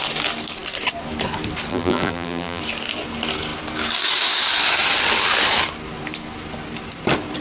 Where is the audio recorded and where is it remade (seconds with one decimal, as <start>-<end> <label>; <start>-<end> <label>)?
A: 0.0-1.7 recorded; 1.7-2.6 remade; 2.6-7.4 recorded